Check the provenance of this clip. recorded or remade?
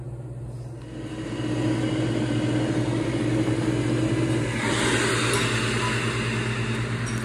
recorded